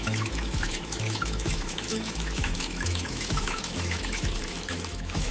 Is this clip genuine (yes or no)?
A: no